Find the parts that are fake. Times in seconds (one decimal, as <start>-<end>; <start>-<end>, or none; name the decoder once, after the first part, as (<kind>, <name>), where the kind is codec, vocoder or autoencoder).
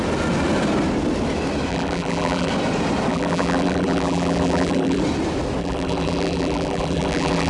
1.7-2.5 (vocoder, BigVGAN v2); 3.1-5.0; 5.6-7.5